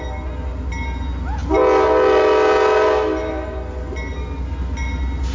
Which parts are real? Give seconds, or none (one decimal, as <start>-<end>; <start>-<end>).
0.0-5.3